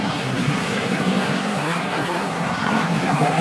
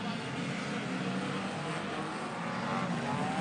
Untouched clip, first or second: second